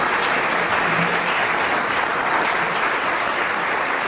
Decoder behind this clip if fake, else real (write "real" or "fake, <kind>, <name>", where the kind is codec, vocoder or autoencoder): real